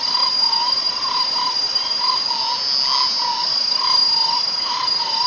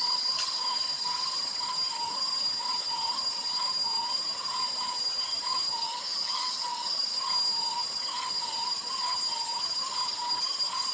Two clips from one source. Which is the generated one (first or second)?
second